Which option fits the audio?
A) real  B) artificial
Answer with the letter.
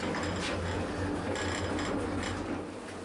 A